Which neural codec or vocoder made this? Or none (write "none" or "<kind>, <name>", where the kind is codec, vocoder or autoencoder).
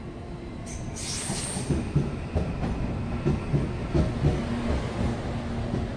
none